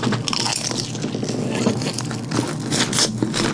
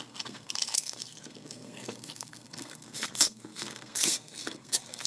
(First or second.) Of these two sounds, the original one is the first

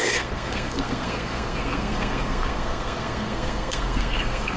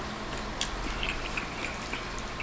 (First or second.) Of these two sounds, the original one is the second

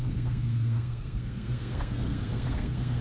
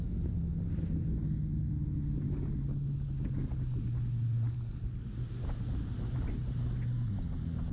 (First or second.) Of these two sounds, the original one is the second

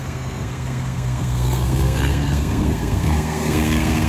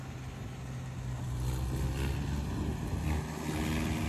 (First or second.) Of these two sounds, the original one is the second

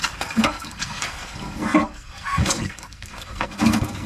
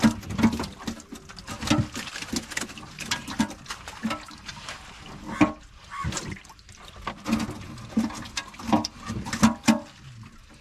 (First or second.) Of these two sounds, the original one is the second